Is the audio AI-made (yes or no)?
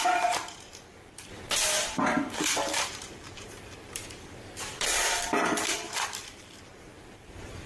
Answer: yes